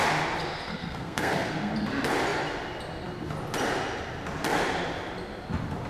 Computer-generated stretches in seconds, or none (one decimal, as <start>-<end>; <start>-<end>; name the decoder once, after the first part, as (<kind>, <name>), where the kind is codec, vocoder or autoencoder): 0.7-1.7 (codec, SNAC)